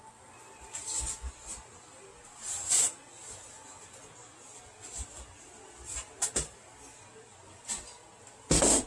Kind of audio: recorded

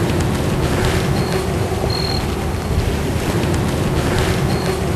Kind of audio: recorded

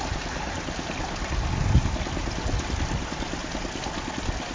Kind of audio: recorded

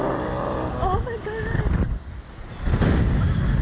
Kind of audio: recorded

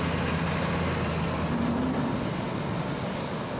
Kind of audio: recorded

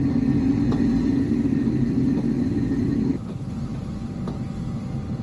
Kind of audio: recorded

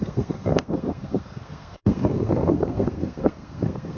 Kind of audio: remade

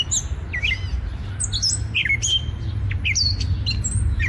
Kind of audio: recorded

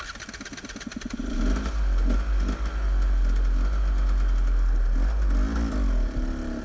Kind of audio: recorded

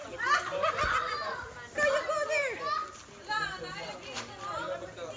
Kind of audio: recorded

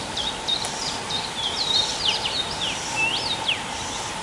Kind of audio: recorded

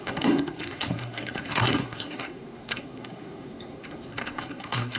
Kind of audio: remade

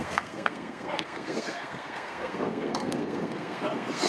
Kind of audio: remade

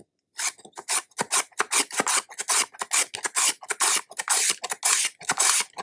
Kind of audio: recorded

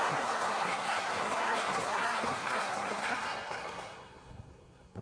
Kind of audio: remade